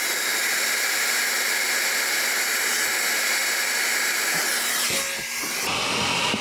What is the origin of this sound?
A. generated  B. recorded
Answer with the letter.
B